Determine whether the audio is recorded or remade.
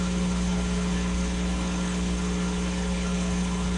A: remade